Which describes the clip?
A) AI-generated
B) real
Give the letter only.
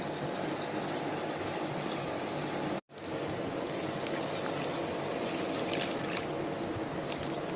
B